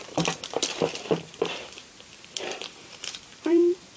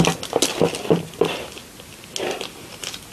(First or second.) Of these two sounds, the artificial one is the first